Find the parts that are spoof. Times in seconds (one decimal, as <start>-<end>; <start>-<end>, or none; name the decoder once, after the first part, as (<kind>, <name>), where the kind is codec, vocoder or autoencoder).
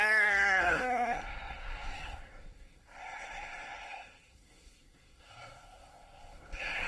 0.0-6.9 (codec, SNAC)